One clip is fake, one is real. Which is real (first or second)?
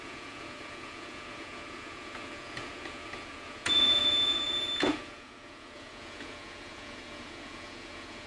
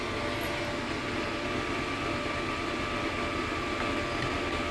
second